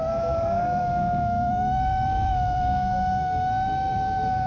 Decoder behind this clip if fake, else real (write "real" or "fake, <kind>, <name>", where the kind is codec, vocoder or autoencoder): fake, codec, SNAC